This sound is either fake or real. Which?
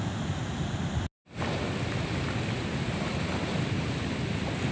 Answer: real